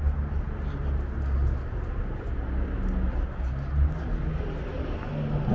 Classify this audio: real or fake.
real